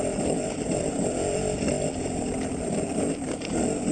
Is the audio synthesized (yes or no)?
no